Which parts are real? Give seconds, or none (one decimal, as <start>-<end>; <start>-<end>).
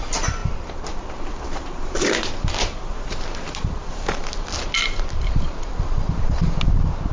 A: 0.0-7.1